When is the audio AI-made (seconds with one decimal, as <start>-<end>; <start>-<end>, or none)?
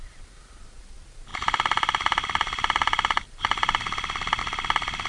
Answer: none